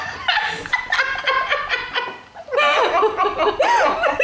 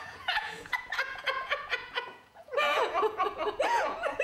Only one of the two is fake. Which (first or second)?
second